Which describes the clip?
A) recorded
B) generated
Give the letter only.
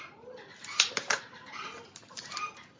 A